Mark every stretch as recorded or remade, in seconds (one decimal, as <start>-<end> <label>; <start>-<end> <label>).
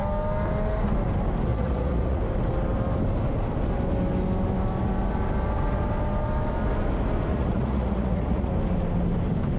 0.0-1.5 recorded; 1.5-2.2 remade; 2.2-7.3 recorded; 7.3-8.5 remade; 8.5-9.6 recorded